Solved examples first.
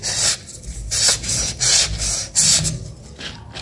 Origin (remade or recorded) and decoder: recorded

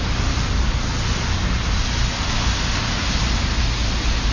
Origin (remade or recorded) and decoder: recorded